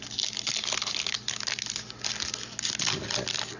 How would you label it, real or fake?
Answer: real